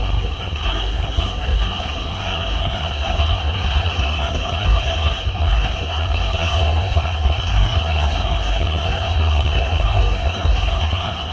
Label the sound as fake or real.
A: fake